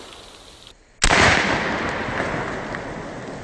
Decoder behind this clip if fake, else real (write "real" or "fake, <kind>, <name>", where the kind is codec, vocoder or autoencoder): real